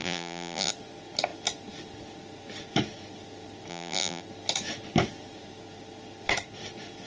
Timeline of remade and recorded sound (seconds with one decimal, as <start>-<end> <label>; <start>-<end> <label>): 0.0-0.7 remade; 0.7-3.7 recorded; 3.7-4.2 remade; 4.2-7.1 recorded